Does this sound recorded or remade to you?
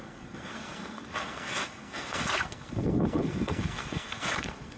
remade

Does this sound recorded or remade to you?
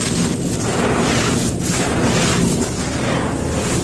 recorded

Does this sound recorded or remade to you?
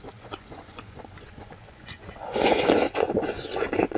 remade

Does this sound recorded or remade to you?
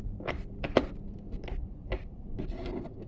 recorded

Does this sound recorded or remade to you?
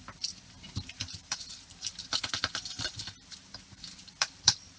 remade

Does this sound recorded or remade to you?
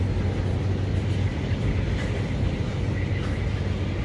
recorded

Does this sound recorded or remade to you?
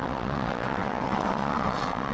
remade